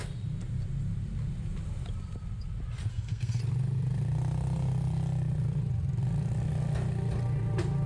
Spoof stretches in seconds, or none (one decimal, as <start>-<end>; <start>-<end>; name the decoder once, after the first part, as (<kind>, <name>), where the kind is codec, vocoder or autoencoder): 2.9-3.4 (codec, SNAC)